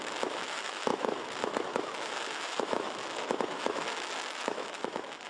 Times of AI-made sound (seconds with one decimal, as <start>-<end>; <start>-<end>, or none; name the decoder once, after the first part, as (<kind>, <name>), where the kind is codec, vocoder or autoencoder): 0.0-5.3 (autoencoder, DAC-VAE)